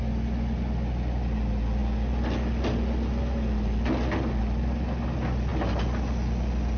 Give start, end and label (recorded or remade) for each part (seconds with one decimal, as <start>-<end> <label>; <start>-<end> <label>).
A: 0.0-6.8 recorded